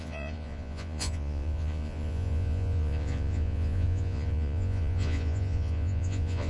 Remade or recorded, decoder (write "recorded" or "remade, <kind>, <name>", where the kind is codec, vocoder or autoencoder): remade, vocoder, Vocos